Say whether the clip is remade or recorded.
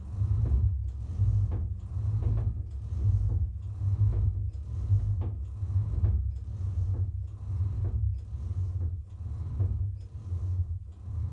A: recorded